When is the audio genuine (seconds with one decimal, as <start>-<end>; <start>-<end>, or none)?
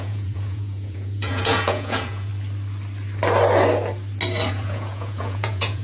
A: 2.3-4.5